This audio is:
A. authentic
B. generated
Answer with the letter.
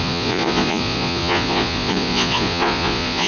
B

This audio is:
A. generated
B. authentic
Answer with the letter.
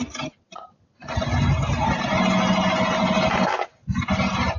B